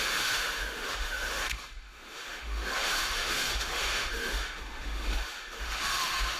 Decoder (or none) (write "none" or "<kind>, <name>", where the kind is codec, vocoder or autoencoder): autoencoder, DAC-VAE